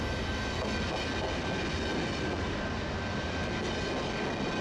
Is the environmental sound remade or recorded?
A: recorded